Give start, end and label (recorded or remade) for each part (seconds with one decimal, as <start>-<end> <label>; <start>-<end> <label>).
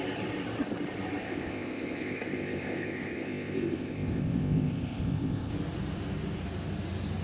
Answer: 0.0-1.2 recorded; 1.2-5.5 remade; 5.5-7.2 recorded